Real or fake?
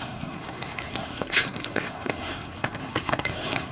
fake